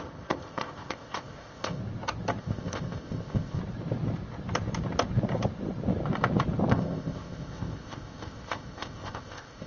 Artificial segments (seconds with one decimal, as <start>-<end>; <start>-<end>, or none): 0.0-1.8; 2.4-3.6; 6.7-9.7